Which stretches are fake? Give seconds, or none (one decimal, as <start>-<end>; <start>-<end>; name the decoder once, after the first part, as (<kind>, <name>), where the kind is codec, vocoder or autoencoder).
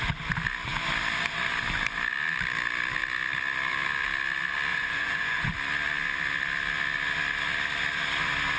4.7-5.5 (vocoder, Vocos)